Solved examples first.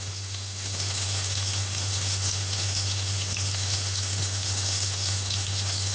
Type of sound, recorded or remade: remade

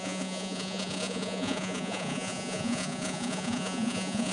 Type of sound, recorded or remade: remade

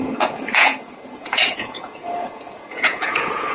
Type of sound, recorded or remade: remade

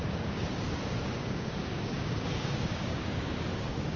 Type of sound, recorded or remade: remade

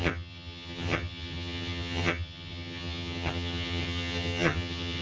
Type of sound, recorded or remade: remade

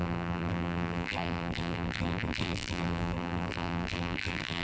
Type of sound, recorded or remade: remade